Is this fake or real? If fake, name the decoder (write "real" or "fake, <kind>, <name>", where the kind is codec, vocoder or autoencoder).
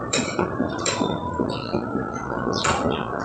fake, vocoder, Vocos